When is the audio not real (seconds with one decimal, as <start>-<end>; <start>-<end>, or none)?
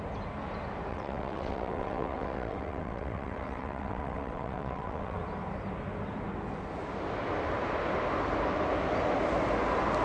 0.9-5.2